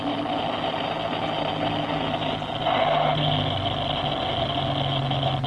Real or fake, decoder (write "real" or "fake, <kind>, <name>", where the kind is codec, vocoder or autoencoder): real